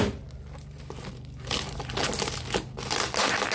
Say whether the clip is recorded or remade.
recorded